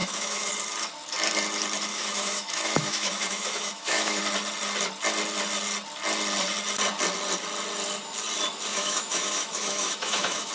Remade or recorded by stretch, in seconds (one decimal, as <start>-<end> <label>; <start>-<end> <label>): 0.0-0.5 remade; 0.5-1.9 recorded; 1.9-4.2 remade; 4.2-8.7 recorded; 8.7-10.5 remade